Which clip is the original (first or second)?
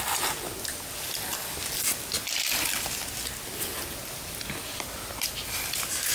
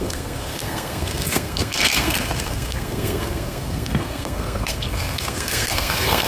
first